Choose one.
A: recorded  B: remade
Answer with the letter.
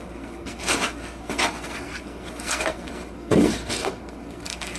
B